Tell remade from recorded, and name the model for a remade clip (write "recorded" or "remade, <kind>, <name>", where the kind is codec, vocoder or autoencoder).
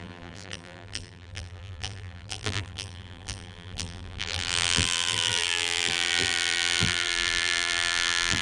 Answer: remade, vocoder, BigVGAN v2